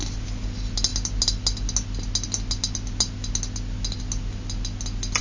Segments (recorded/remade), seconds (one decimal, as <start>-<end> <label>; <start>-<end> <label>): 0.0-5.2 recorded